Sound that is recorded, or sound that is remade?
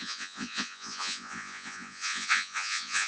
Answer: remade